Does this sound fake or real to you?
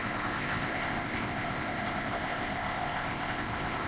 fake